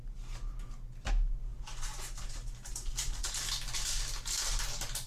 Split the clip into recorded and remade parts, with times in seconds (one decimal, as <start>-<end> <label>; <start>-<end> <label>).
0.0-1.5 recorded; 1.5-3.4 remade; 3.4-5.1 recorded